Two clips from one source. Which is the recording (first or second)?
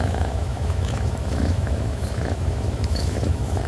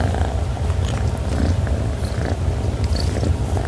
second